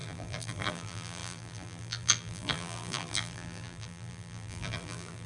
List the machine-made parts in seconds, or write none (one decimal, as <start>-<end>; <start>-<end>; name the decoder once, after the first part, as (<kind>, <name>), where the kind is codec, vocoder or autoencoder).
0.0-5.3 (vocoder, BigVGAN v2)